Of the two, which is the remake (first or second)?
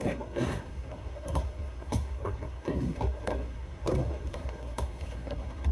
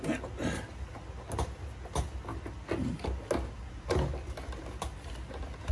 first